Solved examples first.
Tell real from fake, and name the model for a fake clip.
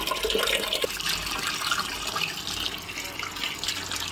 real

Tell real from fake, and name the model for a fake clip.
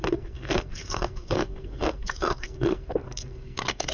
fake, codec, SNAC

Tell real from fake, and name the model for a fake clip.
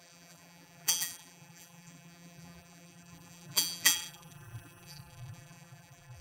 fake, vocoder, BigVGAN v2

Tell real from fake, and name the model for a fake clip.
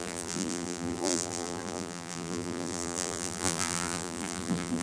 fake, vocoder, BigVGAN v2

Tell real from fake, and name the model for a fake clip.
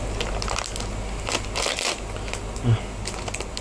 real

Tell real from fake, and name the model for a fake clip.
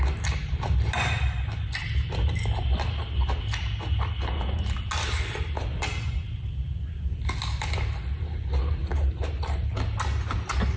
real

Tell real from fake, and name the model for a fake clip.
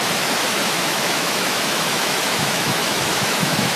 fake, autoencoder, DAC-VAE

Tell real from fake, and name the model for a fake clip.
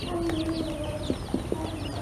real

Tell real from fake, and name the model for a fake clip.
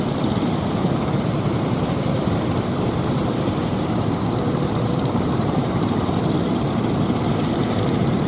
fake, vocoder, BigVGAN v2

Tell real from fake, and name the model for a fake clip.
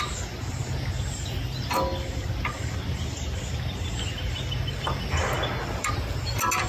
real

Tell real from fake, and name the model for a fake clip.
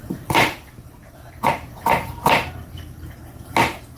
fake, vocoder, BigVGAN v2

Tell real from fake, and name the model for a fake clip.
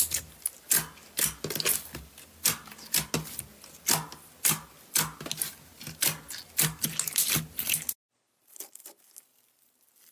real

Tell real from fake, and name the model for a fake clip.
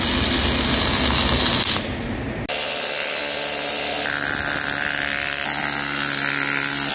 real